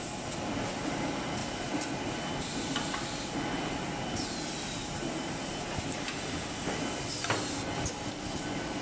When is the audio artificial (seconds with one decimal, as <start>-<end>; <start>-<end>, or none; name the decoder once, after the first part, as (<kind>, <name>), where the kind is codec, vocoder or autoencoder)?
1.4-2.6 (vocoder, BigVGAN v2); 4.8-5.8